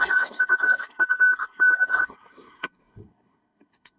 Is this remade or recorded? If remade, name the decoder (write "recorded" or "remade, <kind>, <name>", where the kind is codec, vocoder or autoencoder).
remade, codec, SNAC